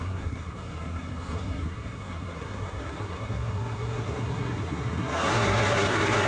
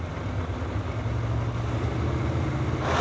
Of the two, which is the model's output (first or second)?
first